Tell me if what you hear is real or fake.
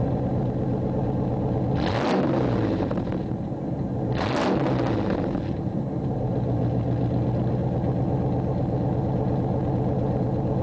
real